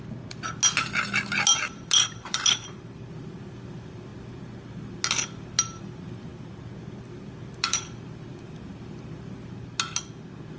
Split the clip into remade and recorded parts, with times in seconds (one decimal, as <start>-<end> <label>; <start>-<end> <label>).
0.0-1.5 recorded; 1.5-3.1 remade; 3.1-6.3 recorded; 6.3-7.8 remade; 7.8-10.6 recorded